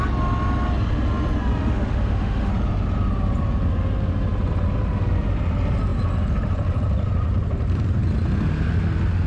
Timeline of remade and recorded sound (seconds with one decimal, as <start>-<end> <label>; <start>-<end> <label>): 0.0-1.6 recorded; 1.6-2.5 remade; 2.5-9.3 recorded